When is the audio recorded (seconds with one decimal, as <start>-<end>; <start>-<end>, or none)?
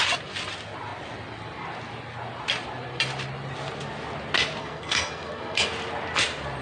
0.0-4.6; 5.7-6.6